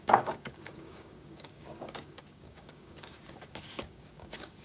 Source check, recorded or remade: remade